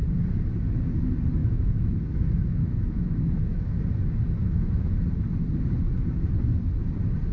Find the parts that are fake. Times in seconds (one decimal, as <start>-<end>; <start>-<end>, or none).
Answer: 1.4-3.7; 4.4-4.9